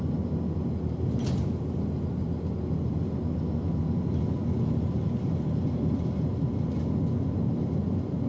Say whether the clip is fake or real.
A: real